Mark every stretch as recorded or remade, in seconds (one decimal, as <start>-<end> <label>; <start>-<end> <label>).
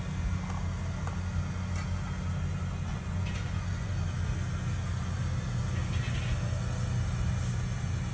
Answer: 0.0-2.9 recorded; 2.9-3.9 remade; 3.9-8.1 recorded